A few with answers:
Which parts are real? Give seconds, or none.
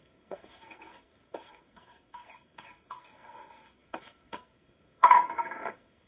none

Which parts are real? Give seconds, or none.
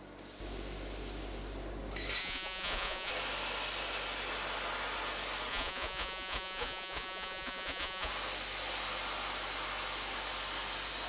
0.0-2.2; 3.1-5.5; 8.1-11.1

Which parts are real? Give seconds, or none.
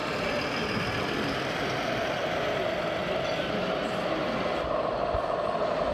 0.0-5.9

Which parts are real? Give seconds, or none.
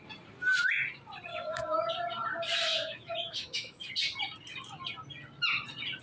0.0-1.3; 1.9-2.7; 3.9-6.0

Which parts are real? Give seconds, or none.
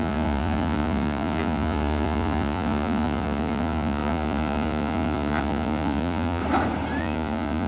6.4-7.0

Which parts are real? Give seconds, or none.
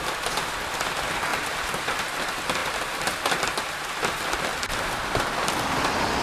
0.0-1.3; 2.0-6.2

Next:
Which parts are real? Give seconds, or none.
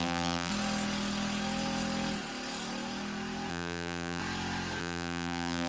0.5-3.5; 4.2-4.8